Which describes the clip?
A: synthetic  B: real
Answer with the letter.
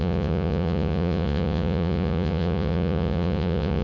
A